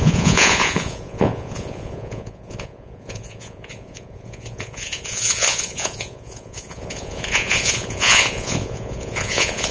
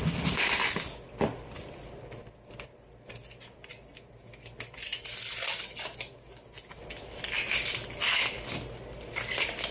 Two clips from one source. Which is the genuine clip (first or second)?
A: second